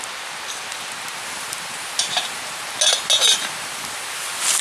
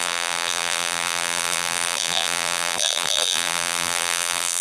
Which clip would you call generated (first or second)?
second